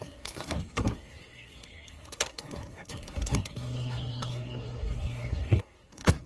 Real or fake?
fake